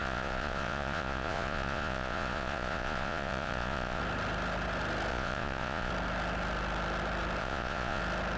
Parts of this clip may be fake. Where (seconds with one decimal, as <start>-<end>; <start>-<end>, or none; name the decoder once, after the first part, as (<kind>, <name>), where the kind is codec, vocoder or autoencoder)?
0.0-4.0 (vocoder, Vocos); 5.1-5.9; 7.4-8.0